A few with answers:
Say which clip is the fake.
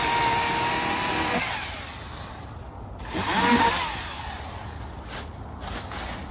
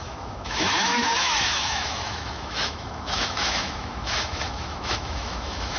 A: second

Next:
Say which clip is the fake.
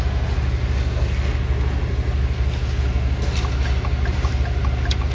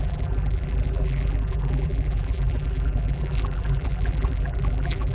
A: second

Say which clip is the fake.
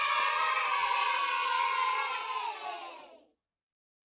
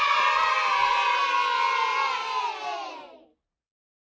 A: first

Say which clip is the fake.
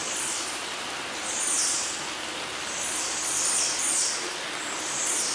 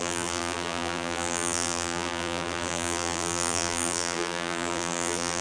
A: second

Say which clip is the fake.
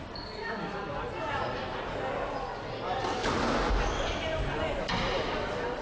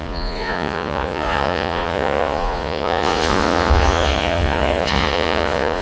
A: second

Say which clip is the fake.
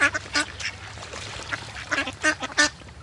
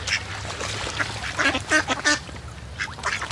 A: first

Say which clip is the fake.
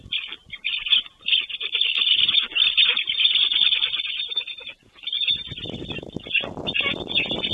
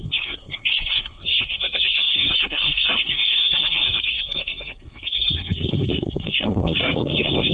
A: second